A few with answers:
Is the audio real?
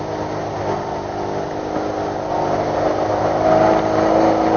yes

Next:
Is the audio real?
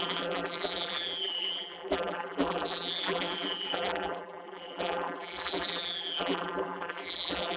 no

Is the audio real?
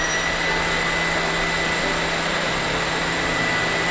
yes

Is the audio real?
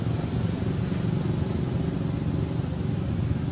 yes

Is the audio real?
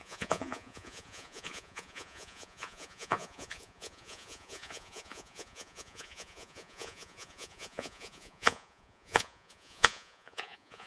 no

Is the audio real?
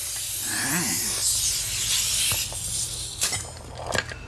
yes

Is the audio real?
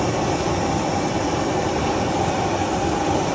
yes